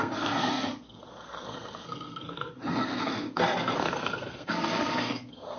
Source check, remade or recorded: remade